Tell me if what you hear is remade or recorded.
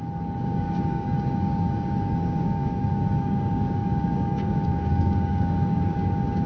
remade